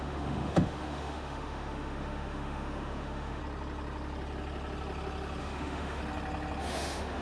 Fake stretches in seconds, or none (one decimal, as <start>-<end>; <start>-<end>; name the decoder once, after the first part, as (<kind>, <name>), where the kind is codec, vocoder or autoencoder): 0.0-3.4 (autoencoder, DAC-VAE); 5.4-6.0; 6.6-7.2

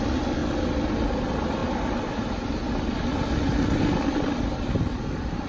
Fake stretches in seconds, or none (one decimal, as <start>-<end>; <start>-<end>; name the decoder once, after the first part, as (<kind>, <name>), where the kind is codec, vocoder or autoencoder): none

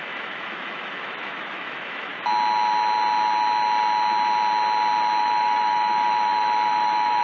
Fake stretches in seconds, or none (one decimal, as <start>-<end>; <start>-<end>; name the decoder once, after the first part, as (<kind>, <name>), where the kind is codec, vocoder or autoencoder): 0.0-2.1 (autoencoder, DAC-VAE); 5.2-7.2